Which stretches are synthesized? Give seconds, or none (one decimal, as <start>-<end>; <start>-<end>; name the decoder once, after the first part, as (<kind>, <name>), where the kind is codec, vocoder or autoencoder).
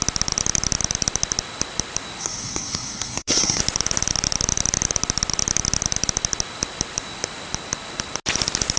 2.2-3.6 (codec, SNAC)